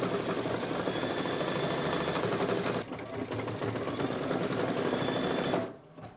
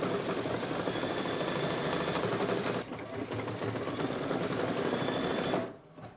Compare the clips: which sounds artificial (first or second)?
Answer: second